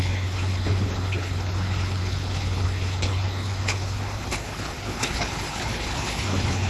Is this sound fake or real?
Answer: fake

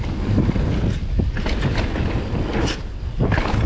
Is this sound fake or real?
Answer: real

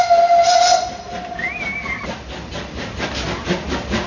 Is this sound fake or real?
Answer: real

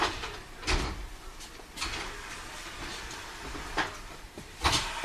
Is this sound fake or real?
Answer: fake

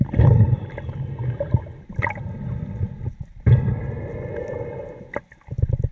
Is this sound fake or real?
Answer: real